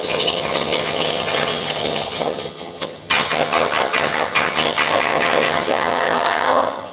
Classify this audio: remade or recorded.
remade